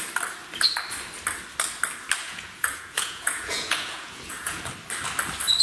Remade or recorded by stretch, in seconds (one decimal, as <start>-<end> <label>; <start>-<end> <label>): 0.0-2.2 recorded; 2.2-4.7 remade; 4.7-5.6 recorded